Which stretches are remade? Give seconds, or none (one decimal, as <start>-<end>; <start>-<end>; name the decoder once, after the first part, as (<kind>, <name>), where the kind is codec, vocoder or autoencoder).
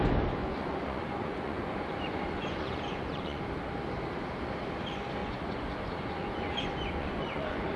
0.4-3.4 (vocoder, Vocos); 5.2-7.8